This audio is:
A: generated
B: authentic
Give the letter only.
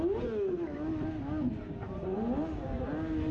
B